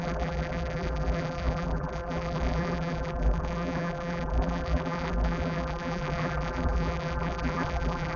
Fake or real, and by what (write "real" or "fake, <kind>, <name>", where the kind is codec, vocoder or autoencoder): fake, vocoder, BigVGAN v2